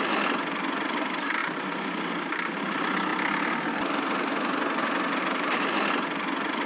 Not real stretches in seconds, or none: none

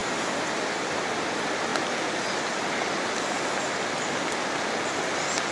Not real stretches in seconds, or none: 0.0-0.5 (vocoder, BigVGAN v2)

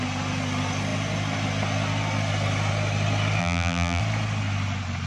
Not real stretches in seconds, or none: 3.4-4.0 (vocoder, BigVGAN v2)